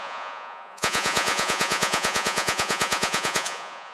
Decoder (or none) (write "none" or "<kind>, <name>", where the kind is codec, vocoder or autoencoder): vocoder, Vocos